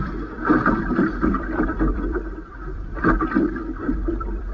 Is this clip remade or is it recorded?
remade